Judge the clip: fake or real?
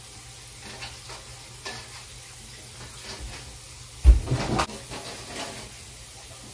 real